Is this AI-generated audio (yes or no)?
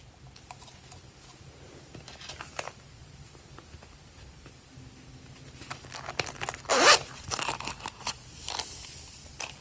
no